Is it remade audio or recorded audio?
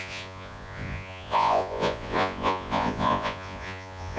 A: remade